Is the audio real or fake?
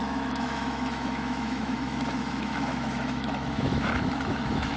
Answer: fake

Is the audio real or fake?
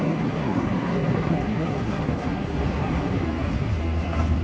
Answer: fake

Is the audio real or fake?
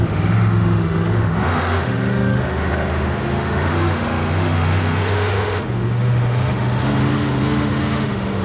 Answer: fake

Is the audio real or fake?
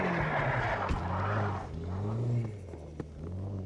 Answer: real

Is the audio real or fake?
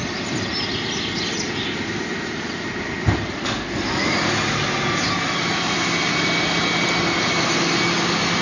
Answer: real